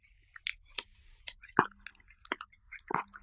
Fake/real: real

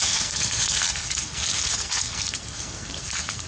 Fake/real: fake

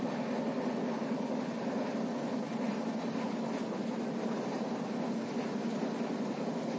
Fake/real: real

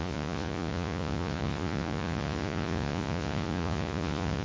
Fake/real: fake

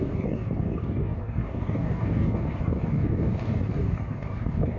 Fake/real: fake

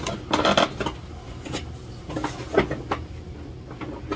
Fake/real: real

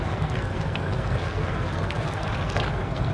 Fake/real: fake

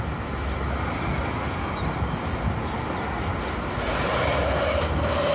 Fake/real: real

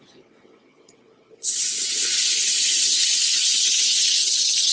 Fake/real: fake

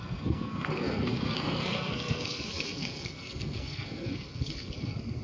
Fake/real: fake